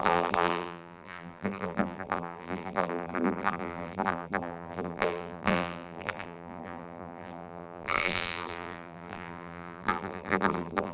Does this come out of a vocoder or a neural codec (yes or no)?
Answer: yes